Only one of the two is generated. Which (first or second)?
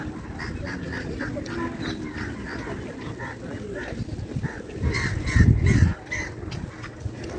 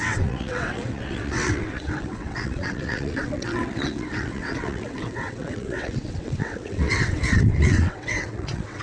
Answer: second